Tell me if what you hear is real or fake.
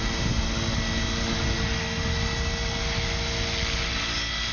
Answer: real